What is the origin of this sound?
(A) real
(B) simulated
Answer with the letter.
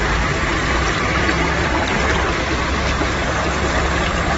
A